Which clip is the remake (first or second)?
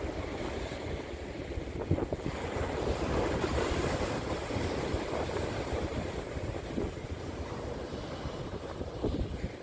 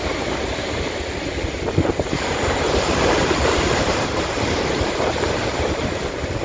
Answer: second